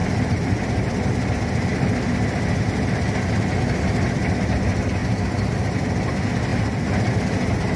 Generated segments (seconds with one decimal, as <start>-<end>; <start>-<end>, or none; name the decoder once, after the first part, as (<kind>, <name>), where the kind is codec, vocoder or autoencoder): 0.0-1.1 (vocoder, BigVGAN v2); 5.0-5.9; 6.5-7.8